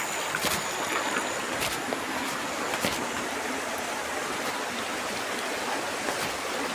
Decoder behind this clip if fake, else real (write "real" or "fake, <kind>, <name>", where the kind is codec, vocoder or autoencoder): real